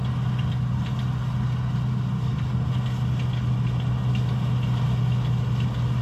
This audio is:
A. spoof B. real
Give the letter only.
B